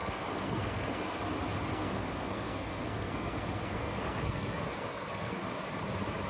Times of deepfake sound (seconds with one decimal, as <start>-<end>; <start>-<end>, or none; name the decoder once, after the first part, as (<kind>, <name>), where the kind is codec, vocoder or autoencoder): 0.0-1.2 (codec, SNAC); 1.7-5.5